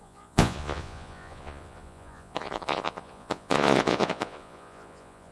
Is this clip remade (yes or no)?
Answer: yes